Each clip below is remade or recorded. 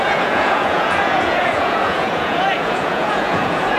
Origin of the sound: remade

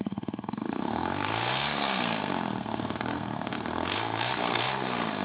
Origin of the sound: remade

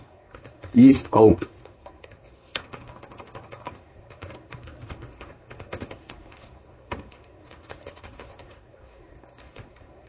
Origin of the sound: remade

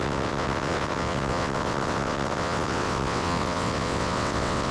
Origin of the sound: remade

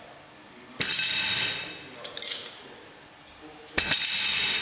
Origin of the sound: recorded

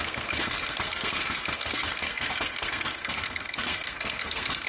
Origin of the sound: remade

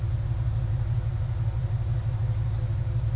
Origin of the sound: recorded